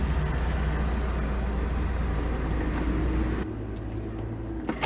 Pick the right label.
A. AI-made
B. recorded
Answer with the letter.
B